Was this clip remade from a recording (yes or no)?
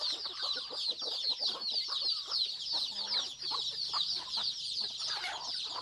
no